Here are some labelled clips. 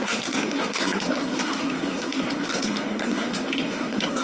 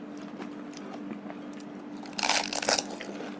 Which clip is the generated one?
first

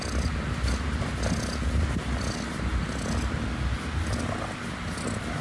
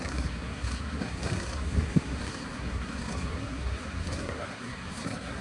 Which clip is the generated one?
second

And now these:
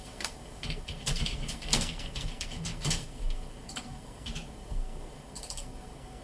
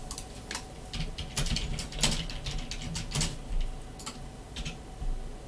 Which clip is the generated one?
first